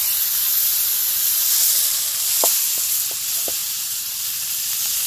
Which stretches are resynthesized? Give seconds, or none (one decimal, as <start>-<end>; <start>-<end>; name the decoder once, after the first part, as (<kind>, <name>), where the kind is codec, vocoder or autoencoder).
3.6-4.2 (vocoder, BigVGAN v2)